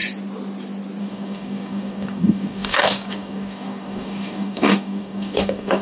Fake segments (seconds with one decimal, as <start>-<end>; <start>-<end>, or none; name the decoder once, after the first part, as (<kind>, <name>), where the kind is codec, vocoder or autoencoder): 1.0-5.8 (codec, DAC)